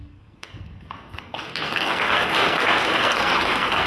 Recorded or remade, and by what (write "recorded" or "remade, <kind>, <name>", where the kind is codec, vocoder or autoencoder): remade, codec, SNAC